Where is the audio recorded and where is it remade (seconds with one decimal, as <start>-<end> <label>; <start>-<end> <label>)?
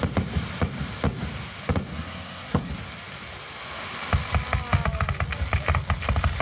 0.0-1.9 recorded; 1.9-2.7 remade; 2.7-6.4 recorded